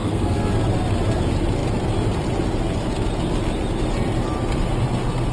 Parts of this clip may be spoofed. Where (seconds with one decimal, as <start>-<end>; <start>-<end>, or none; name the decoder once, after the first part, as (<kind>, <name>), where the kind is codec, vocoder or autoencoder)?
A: 0.0-0.5 (codec, SNAC)